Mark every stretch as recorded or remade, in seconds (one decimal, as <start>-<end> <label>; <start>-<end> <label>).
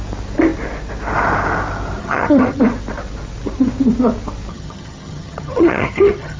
0.0-2.0 recorded; 2.0-2.6 remade; 2.6-4.5 recorded; 4.5-6.4 remade